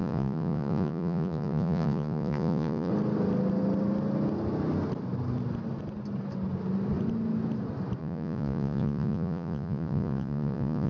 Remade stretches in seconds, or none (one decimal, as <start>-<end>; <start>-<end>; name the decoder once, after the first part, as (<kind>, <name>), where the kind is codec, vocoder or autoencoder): 0.0-2.9 (vocoder, Vocos); 8.0-10.9